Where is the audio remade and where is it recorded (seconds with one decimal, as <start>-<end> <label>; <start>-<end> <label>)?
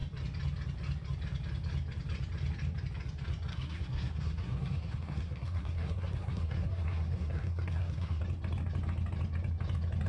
0.0-3.5 recorded; 3.5-8.2 remade; 8.2-10.1 recorded